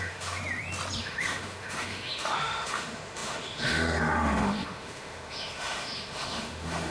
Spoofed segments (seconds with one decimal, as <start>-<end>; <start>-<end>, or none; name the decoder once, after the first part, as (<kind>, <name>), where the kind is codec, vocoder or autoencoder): 0.0-0.4 (autoencoder, DAC-VAE); 1.0-6.9